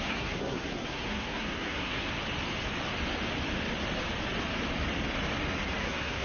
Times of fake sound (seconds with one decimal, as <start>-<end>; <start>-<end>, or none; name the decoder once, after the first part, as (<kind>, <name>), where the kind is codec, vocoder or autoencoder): 0.0-2.1 (codec, SNAC); 5.8-6.2